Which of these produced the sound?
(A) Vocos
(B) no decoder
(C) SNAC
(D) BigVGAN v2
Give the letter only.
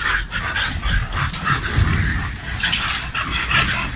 B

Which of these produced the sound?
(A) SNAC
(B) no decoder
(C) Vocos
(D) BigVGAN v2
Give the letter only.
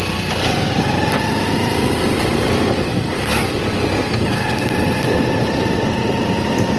B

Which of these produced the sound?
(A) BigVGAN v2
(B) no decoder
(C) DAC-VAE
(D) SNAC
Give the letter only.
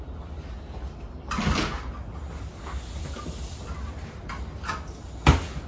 B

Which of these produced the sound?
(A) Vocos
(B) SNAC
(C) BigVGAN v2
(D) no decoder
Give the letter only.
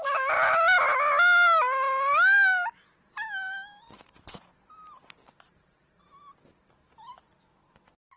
D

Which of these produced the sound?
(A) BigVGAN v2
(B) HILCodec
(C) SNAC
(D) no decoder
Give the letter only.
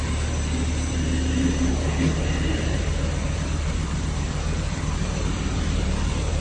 A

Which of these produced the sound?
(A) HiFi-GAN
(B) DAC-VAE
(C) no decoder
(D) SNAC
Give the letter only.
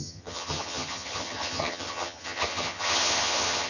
A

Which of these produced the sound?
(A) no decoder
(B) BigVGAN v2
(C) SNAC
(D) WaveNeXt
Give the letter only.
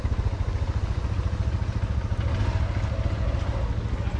A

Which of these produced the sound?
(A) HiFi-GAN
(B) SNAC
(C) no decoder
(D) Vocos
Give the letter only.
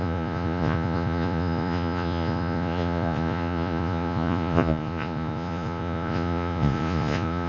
D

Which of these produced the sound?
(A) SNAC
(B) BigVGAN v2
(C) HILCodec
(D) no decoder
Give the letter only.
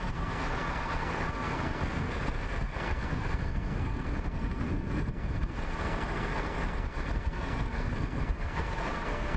A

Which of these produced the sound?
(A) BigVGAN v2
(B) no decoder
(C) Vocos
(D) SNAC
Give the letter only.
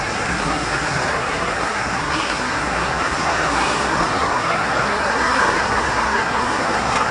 D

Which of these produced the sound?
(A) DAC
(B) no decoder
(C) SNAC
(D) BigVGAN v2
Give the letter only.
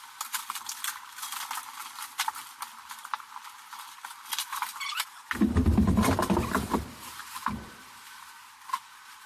D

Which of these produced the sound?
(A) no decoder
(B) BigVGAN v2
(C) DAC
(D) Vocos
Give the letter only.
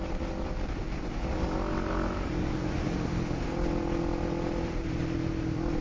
A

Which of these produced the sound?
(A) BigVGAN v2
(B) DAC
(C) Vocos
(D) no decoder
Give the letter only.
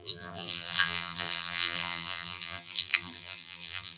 A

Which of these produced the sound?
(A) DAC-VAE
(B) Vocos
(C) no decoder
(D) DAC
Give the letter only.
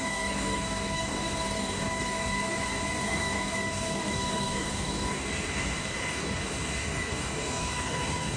D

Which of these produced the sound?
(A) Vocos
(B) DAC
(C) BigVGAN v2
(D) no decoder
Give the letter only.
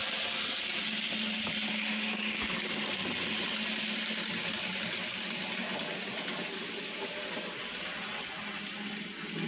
D